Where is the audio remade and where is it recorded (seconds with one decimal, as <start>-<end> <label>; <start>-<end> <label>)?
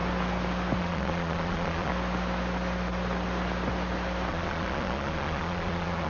0.0-0.8 recorded; 0.8-1.9 remade; 1.9-4.3 recorded; 4.3-6.1 remade